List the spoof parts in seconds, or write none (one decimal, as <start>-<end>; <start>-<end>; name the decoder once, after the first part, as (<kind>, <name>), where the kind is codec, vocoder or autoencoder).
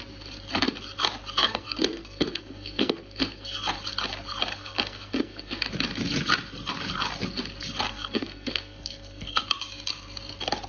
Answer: 1.4-3.6 (codec, SNAC); 4.5-5.7; 7.9-9.4